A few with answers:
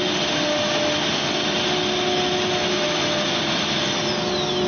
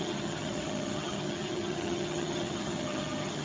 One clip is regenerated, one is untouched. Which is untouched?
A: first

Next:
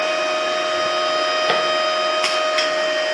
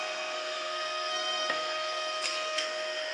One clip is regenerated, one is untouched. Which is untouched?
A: first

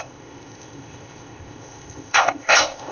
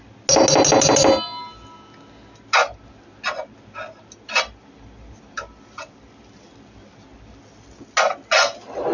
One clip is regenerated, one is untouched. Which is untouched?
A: second